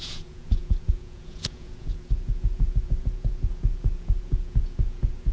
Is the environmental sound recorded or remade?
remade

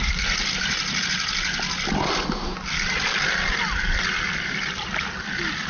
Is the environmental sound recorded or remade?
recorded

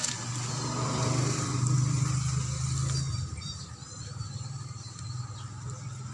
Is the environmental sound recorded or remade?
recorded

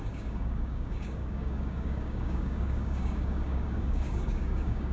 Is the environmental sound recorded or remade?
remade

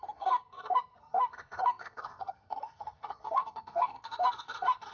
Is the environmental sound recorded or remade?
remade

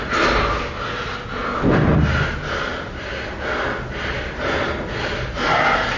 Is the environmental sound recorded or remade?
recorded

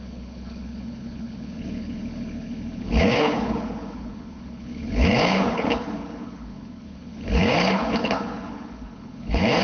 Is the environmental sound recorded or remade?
remade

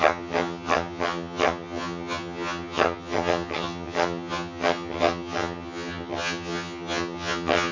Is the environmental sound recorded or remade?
remade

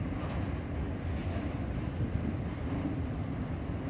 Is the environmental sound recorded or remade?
recorded